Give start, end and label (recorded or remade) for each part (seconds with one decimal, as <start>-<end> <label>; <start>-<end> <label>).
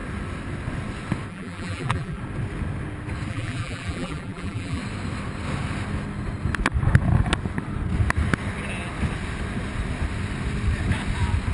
0.0-1.3 recorded; 1.3-2.2 remade; 2.2-3.3 recorded; 3.3-4.8 remade; 4.8-11.5 recorded